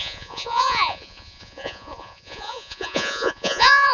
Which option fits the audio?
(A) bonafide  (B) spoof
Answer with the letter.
B